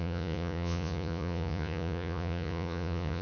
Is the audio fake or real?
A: fake